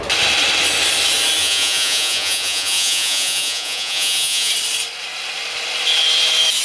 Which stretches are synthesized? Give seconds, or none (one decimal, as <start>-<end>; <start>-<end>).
1.4-4.5